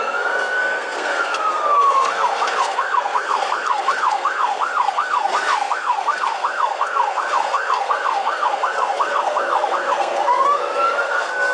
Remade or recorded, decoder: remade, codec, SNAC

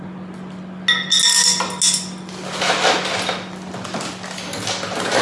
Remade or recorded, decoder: recorded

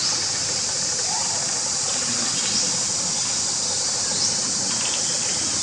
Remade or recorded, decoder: recorded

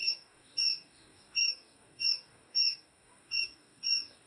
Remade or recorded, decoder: remade, codec, DAC